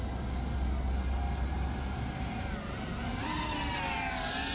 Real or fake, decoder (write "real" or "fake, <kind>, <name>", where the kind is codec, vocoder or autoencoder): real